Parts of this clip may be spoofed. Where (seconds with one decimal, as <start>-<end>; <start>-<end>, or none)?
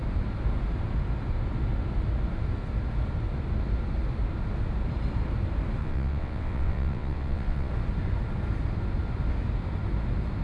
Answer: 5.8-7.7